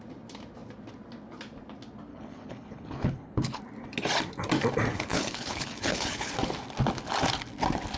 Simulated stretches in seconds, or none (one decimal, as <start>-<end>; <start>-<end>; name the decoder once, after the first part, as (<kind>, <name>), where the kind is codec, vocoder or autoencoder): 2.1-3.6 (codec, HILCodec); 4.9-6.3